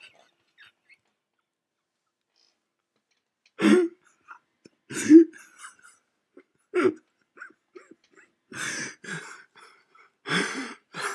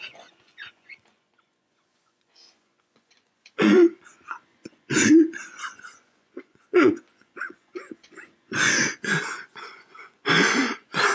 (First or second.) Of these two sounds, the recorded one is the first